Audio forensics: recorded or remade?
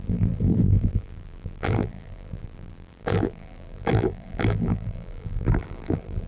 remade